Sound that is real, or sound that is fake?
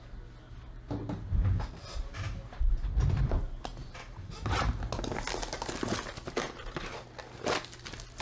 real